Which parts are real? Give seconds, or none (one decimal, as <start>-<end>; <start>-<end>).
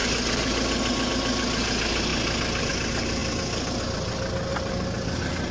0.0-4.5